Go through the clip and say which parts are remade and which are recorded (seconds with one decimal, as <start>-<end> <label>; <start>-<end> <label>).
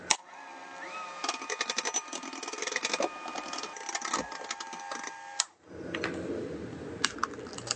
0.0-7.8 recorded